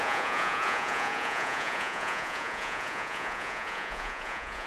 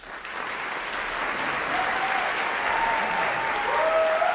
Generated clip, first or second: first